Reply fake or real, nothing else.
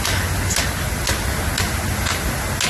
real